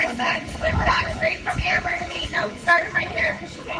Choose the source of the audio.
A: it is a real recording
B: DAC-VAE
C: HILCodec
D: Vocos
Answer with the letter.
C